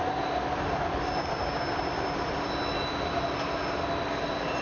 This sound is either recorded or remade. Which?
recorded